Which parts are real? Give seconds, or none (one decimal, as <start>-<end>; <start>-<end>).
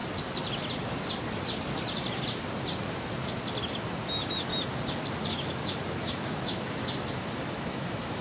0.0-3.8; 4.5-5.3